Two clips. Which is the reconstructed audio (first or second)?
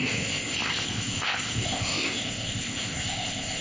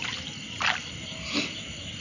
first